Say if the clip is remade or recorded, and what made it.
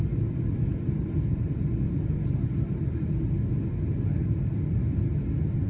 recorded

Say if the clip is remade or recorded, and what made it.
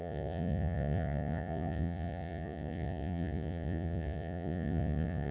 remade, vocoder, Vocos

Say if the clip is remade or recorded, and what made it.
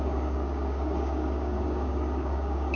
remade, codec, DAC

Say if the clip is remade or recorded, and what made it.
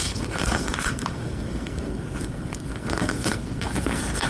remade, codec, SNAC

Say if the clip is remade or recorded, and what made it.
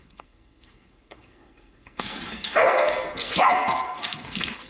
remade, codec, SNAC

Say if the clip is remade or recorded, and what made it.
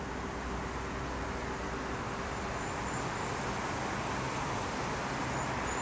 recorded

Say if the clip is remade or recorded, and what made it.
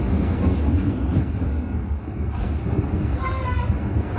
remade, codec, SNAC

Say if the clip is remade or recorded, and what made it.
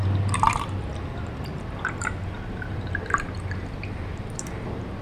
remade, vocoder, BigVGAN v2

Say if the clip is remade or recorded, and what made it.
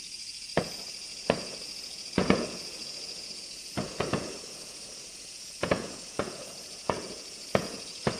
remade, vocoder, Vocos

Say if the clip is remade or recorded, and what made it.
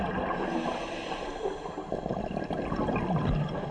recorded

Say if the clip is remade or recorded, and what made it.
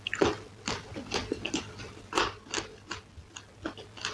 recorded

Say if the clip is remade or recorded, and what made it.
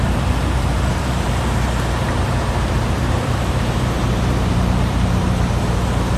remade, vocoder, BigVGAN v2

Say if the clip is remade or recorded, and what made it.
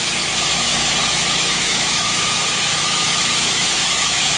remade, autoencoder, DAC-VAE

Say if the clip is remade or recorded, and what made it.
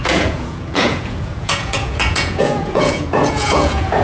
remade, vocoder, Vocos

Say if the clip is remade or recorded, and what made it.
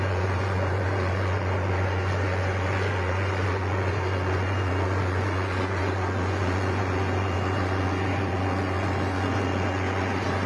remade, vocoder, Vocos